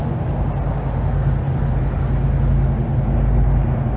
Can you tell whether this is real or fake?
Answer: real